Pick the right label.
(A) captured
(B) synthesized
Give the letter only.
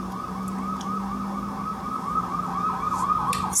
A